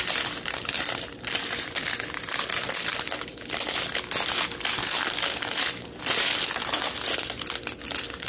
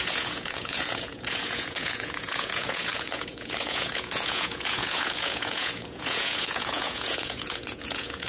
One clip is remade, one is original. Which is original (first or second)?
first